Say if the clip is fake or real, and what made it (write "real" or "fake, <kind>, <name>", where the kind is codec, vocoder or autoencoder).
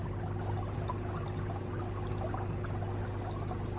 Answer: real